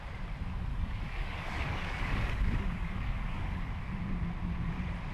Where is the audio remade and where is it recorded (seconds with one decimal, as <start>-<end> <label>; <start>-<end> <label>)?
0.0-0.7 recorded; 0.7-3.8 remade; 3.8-5.1 recorded